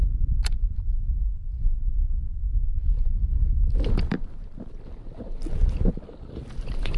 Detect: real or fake real